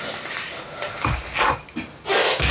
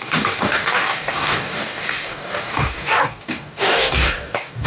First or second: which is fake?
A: second